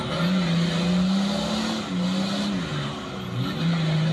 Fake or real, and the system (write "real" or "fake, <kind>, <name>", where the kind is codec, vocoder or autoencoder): real